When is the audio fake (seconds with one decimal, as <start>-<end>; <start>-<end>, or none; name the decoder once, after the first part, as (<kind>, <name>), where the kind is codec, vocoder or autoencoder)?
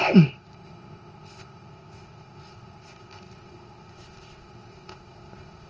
0.0-5.7 (codec, ZipCodec)